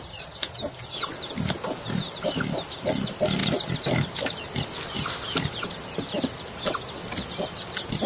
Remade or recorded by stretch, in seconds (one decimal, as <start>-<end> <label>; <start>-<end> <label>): 0.0-8.1 recorded